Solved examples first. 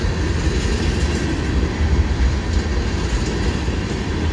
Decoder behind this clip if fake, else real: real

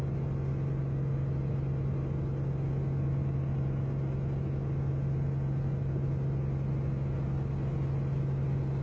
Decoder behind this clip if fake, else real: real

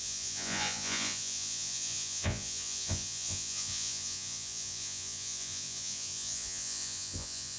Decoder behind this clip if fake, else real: fake, vocoder, Vocos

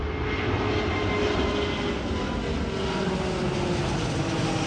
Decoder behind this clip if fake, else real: real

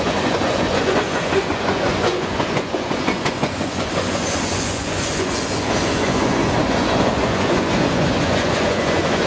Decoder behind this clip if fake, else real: fake, vocoder, Vocos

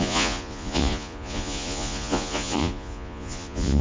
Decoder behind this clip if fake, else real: fake, vocoder, Vocos